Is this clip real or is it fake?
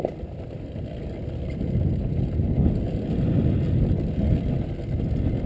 real